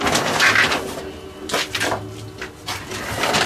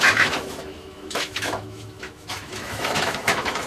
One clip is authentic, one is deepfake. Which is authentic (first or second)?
first